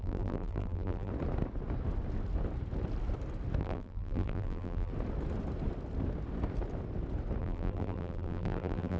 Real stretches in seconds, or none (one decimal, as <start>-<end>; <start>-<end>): 1.1-3.6; 4.9-7.4